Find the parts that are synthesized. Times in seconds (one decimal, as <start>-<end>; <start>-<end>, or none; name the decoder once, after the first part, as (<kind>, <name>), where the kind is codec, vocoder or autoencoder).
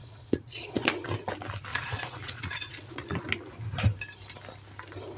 0.0-0.9 (vocoder, Vocos); 1.7-3.2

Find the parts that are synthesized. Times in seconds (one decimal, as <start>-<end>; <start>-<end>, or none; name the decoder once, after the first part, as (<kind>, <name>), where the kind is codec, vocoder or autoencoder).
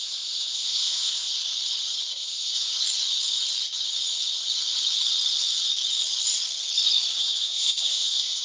0.0-1.3 (codec, SNAC); 2.1-2.7; 7.2-8.4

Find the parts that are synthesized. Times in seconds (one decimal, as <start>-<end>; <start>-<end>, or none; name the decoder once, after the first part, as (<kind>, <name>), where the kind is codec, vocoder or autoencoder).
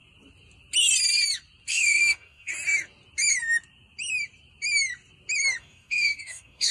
1.7-2.5 (codec, DAC); 5.6-6.7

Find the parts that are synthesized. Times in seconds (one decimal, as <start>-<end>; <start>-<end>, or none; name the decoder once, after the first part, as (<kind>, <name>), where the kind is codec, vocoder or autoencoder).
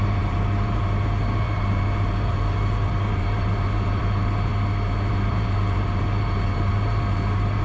0.0-4.5 (vocoder, BigVGAN v2); 5.1-7.6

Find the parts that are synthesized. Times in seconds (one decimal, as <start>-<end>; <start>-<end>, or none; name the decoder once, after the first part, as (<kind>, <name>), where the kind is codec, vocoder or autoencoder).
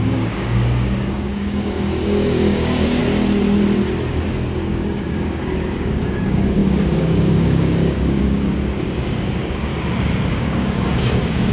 0.0-3.0 (codec, DAC); 4.3-9.7; 10.3-11.5